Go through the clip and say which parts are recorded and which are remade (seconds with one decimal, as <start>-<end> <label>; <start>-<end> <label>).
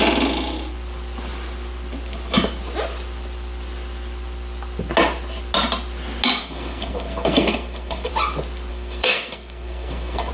0.0-6.4 recorded; 6.4-8.1 remade; 8.1-8.7 recorded; 8.7-10.3 remade